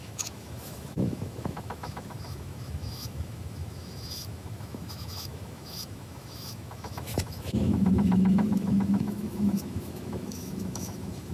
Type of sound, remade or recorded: remade